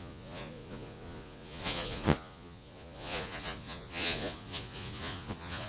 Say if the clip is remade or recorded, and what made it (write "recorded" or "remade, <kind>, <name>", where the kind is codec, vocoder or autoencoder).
remade, vocoder, Vocos